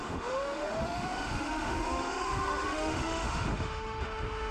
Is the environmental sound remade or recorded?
remade